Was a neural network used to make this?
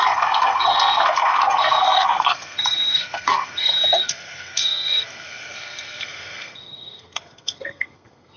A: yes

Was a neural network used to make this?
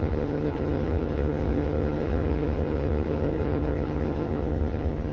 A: yes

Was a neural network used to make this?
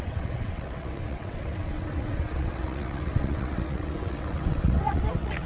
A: yes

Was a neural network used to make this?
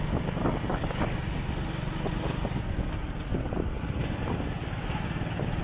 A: no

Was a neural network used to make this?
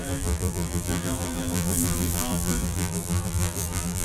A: yes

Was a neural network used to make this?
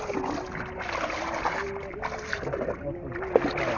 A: no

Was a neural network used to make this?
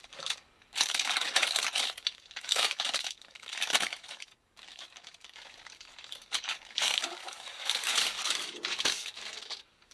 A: yes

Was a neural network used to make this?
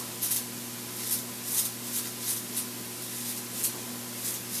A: no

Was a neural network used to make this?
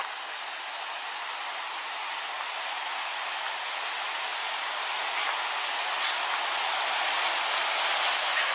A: no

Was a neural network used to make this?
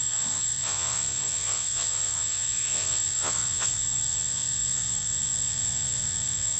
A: yes